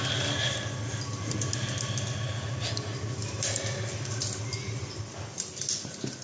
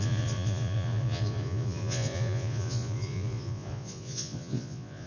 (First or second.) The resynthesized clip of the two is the second